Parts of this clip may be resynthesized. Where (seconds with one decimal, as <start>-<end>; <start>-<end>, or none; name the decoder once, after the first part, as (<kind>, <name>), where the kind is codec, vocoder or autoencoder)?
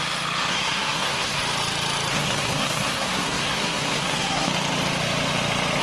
0.5-1.4 (codec, SNAC); 2.1-4.5